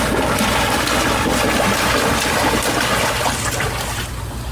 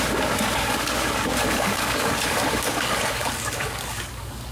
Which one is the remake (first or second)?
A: second